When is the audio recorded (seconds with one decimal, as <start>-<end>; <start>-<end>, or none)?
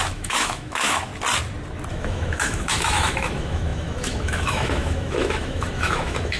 1.1-1.9